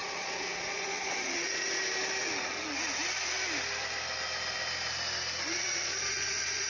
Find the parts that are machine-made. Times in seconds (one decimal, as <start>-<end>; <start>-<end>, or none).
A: 0.0-1.8; 5.5-6.7